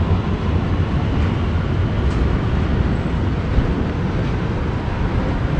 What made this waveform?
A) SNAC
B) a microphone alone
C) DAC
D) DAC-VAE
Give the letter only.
B